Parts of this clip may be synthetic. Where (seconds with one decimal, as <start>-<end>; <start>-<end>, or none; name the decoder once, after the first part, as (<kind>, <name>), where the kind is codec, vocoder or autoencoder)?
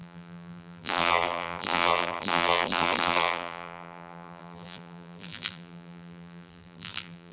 0.0-7.3 (vocoder, BigVGAN v2)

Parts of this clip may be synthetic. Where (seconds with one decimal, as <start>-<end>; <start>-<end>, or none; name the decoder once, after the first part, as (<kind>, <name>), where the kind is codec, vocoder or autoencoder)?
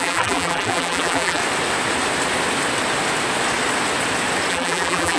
0.0-1.4 (vocoder, BigVGAN v2); 4.5-5.2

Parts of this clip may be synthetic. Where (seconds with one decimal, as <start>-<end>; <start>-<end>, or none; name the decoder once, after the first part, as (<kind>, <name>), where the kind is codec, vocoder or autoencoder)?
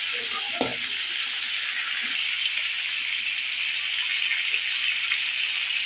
0.7-2.8 (vocoder, BigVGAN v2)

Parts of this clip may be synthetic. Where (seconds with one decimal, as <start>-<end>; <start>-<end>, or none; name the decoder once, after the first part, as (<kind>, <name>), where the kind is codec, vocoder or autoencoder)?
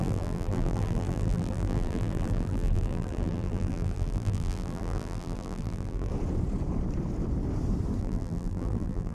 0.0-6.1 (vocoder, BigVGAN v2); 8.0-9.1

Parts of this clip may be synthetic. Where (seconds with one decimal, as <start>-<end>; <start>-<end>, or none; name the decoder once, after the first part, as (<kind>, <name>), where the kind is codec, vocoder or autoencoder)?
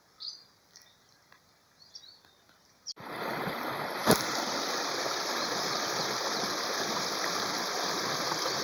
0.0-4.0 (vocoder, BigVGAN v2); 7.0-8.6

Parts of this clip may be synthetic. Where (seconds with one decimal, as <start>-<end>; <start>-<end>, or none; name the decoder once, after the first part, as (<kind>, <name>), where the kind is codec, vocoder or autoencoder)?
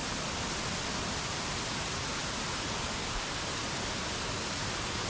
none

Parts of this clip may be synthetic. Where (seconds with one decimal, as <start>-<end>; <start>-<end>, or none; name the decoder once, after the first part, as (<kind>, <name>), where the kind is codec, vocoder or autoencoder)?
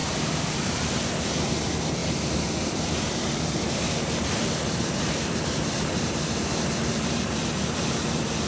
1.1-8.5 (vocoder, BigVGAN v2)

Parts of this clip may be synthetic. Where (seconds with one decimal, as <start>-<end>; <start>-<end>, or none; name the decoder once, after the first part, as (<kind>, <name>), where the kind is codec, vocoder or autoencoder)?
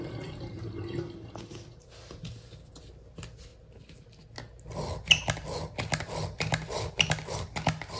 none